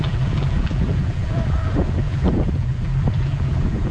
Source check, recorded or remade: remade